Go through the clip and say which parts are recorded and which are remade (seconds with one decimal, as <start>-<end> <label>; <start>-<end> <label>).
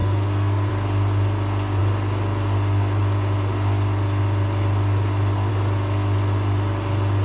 0.0-0.7 remade; 0.7-7.2 recorded